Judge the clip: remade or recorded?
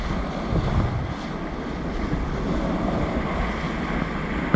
recorded